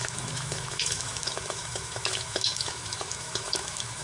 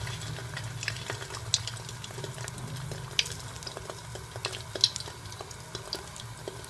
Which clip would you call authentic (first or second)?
second